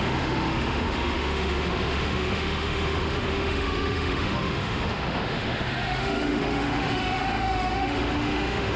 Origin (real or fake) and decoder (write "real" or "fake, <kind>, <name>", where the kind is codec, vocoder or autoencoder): fake, autoencoder, DAC-VAE